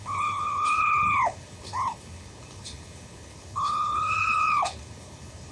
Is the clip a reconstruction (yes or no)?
yes